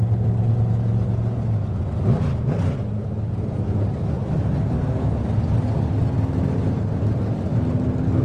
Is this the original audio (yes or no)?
yes